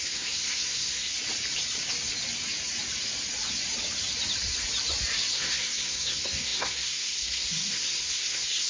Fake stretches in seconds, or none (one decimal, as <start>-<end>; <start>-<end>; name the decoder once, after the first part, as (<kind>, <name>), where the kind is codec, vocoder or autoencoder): 0.0-1.1 (codec, SNAC); 5.3-8.7